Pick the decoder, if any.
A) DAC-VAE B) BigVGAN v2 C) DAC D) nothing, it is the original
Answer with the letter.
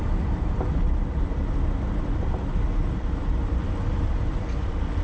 D